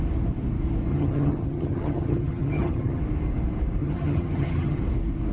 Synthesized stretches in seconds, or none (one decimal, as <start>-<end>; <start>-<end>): 0.9-3.0; 3.8-4.8

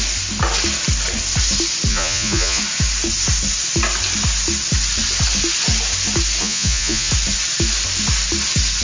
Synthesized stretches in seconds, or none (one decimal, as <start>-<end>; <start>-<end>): 1.9-2.6; 6.4-7.1

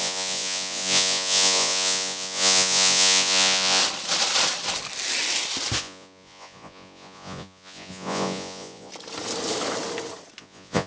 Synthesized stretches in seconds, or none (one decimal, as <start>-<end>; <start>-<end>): 0.0-3.8; 5.8-8.9; 10.4-10.9

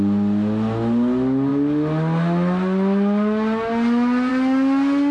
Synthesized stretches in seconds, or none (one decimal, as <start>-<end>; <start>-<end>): none

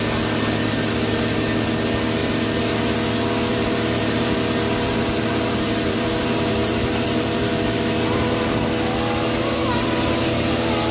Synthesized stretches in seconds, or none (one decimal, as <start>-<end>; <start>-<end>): 3.5-7.8; 9.6-10.5